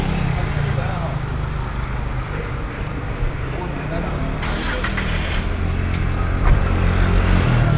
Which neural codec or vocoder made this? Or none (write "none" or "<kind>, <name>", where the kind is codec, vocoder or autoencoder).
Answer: none